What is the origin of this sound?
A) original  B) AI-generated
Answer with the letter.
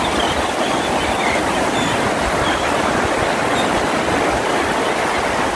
A